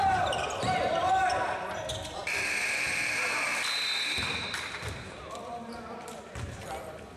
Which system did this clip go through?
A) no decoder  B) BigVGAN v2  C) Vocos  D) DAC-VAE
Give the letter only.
B